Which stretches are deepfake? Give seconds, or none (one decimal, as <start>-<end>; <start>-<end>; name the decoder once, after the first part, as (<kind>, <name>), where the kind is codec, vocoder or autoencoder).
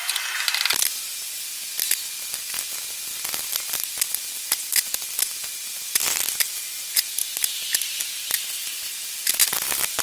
none